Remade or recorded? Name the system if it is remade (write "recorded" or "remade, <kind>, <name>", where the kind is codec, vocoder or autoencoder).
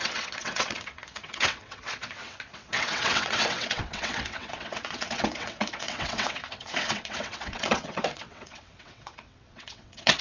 remade, vocoder, WaveNeXt